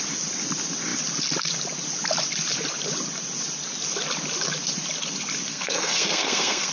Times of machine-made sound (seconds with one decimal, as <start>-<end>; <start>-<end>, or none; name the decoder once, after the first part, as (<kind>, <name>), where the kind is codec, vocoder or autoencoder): 5.5-6.7 (codec, SNAC)